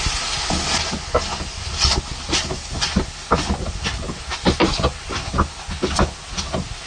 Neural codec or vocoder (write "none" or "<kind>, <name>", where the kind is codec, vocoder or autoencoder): none